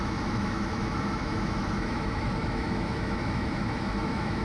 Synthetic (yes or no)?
yes